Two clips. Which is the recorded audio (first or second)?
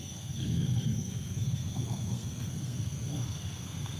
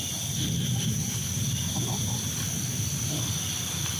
second